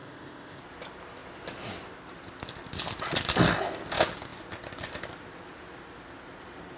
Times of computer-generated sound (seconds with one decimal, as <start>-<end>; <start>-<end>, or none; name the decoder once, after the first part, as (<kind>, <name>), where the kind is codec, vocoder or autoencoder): 0.0-0.6 (codec, ZipCodec)